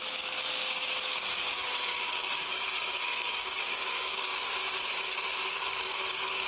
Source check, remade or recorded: remade